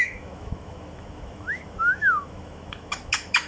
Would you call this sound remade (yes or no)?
yes